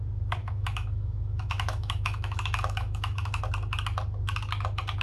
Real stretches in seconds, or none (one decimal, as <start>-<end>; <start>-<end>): 0.0-0.4; 3.4-5.0